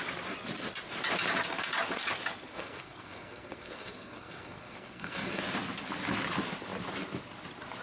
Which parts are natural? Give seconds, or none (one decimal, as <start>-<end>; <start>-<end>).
0.0-2.5; 5.4-7.8